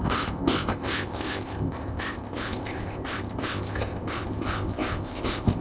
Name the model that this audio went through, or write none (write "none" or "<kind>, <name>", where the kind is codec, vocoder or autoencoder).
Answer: codec, ZipCodec